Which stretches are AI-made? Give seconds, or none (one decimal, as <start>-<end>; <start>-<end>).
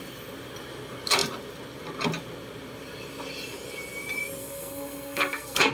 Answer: 4.4-5.7